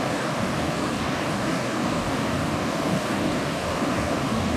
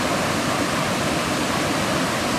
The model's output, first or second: first